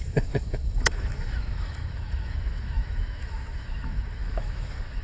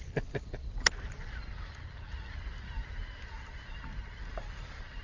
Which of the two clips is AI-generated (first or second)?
first